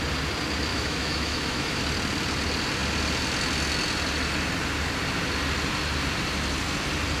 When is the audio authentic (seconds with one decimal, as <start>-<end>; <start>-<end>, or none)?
0.0-0.7; 1.8-7.2